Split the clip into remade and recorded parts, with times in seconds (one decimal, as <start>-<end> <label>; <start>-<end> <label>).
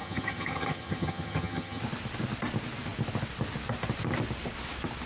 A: 0.0-1.8 remade; 1.8-5.1 recorded